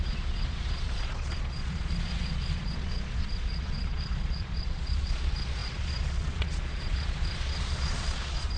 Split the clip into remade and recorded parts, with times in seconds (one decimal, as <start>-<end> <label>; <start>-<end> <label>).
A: 0.0-8.6 remade